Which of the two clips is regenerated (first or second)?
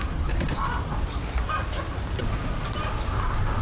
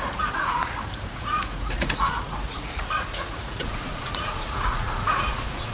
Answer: second